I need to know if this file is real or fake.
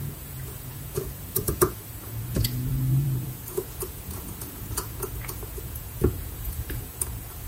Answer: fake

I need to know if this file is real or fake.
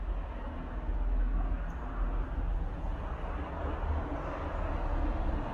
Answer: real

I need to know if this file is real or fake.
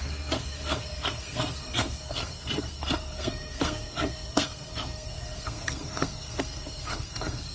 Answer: fake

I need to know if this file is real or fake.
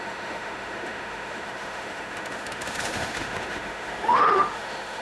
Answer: fake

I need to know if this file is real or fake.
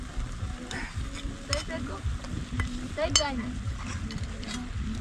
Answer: real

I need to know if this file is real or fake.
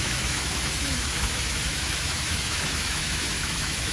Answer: fake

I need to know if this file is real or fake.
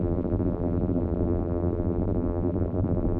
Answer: fake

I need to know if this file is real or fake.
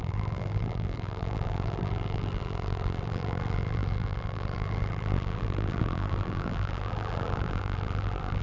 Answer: fake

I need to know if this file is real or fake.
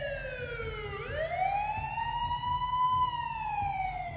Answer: real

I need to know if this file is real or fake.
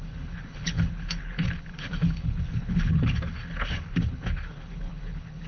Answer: fake